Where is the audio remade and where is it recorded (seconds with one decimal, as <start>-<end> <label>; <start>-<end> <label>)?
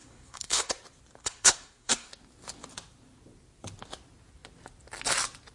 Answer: 0.0-0.7 remade; 0.7-1.2 recorded; 1.2-2.1 remade; 2.1-5.5 recorded